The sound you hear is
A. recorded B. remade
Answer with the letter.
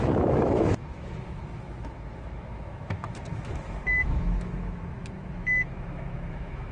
B